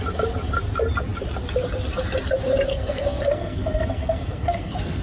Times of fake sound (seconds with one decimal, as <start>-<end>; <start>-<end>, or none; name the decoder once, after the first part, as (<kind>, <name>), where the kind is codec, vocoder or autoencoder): 2.7-5.0 (codec, SNAC)